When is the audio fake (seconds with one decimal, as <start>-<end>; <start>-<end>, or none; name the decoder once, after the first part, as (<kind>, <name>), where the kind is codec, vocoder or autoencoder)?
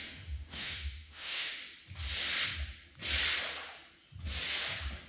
0.0-1.6 (autoencoder, DAC-VAE)